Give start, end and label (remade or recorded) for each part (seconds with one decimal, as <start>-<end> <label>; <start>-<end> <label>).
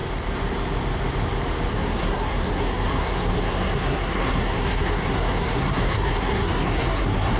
0.0-1.7 recorded; 1.7-7.4 remade